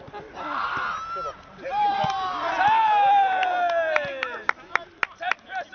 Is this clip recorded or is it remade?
recorded